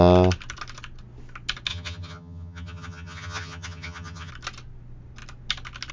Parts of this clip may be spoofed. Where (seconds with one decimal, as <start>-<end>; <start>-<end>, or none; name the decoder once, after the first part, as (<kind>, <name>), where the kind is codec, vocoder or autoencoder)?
1.7-4.3 (vocoder, HiFi-GAN)